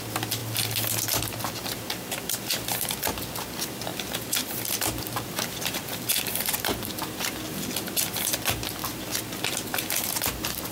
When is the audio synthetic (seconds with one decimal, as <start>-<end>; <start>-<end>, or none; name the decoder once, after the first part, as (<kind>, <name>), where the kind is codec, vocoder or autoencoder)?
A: none